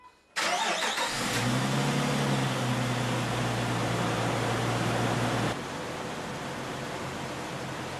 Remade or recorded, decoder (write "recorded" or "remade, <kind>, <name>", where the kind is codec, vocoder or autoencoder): recorded